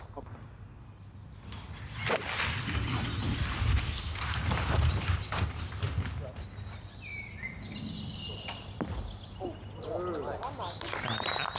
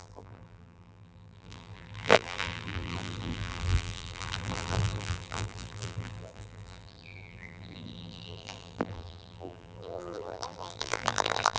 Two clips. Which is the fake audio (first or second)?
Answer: second